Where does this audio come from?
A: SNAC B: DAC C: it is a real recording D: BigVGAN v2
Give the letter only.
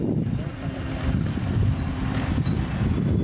C